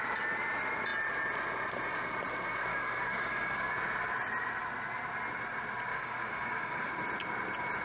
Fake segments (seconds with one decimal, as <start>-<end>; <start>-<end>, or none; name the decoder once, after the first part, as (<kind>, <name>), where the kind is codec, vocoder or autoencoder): 2.7-3.7 (codec, DAC); 5.9-6.9